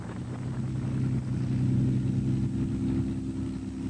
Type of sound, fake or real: real